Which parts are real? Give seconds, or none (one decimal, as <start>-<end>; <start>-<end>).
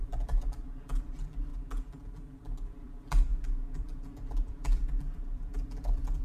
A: 1.5-2.7; 3.3-3.8